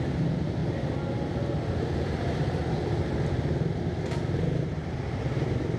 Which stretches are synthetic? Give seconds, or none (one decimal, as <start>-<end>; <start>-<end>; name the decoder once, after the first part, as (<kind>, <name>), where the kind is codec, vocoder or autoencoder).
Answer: 0.0-0.6 (vocoder, BigVGAN v2); 2.0-2.6; 4.6-5.8